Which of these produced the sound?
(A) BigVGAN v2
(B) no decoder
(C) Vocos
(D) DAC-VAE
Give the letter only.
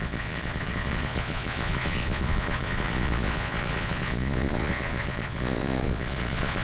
C